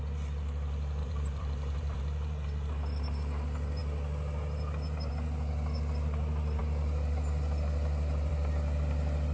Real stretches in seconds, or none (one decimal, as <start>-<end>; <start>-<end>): 0.0-1.0; 2.0-9.3